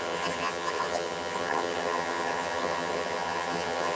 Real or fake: fake